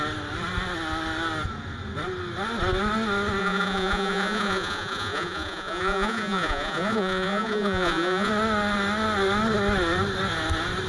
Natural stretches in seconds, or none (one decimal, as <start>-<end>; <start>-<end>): 0.0-3.4; 8.3-10.9